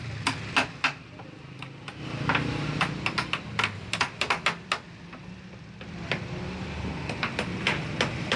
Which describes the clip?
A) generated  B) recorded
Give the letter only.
B